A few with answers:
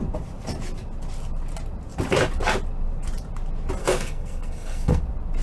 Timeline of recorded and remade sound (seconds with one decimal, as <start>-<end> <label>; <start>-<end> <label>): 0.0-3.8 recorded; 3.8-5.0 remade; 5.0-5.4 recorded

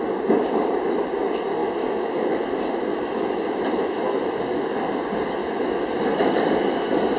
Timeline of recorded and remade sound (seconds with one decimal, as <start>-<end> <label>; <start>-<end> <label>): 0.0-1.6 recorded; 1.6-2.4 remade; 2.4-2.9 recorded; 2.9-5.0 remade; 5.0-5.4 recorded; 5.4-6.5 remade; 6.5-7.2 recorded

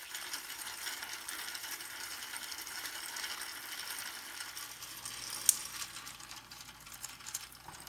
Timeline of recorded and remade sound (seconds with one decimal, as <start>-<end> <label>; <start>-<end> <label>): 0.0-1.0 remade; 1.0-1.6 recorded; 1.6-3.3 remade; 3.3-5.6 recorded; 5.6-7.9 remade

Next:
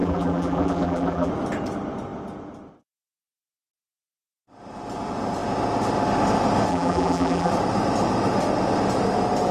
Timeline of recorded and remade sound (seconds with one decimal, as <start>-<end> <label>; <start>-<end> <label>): 0.0-1.3 remade; 1.3-6.7 recorded; 6.7-7.5 remade; 7.5-9.5 recorded

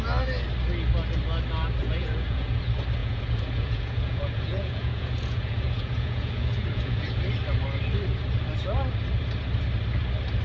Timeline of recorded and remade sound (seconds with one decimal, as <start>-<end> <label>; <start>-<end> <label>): 0.0-1.8 recorded; 1.8-2.6 remade; 2.6-3.0 recorded; 3.0-7.2 remade; 7.2-10.4 recorded